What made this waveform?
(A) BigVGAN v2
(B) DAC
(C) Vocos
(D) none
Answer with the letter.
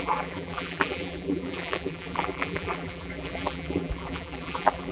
A